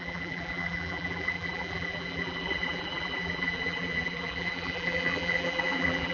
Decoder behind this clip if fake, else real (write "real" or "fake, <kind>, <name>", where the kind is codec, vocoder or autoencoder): fake, vocoder, BigVGAN v2